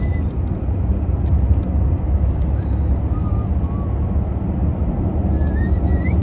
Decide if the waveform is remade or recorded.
recorded